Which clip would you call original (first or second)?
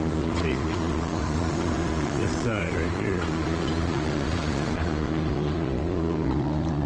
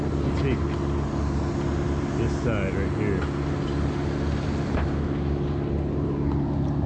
second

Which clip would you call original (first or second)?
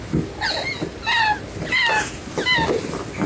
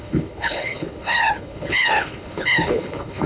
first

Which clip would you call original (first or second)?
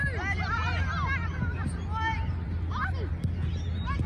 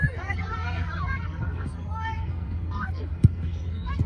first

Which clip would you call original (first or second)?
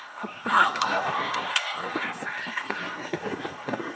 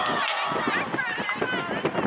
second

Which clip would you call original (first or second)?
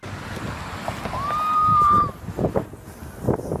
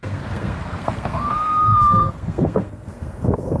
first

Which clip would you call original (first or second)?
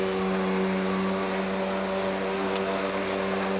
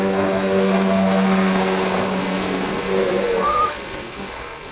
first